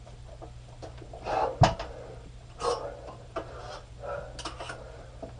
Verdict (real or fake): real